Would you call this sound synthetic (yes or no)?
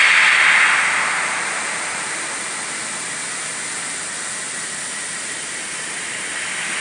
no